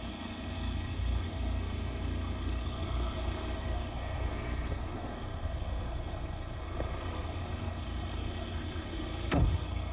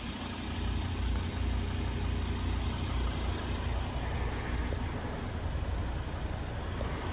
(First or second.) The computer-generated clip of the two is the first